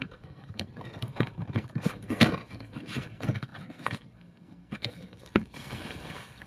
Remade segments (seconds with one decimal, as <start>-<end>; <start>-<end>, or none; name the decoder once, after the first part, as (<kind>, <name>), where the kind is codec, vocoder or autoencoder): 0.0-6.5 (codec, SNAC)